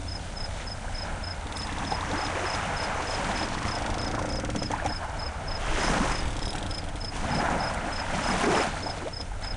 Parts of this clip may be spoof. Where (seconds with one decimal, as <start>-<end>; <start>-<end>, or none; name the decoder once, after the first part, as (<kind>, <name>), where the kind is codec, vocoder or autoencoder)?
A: none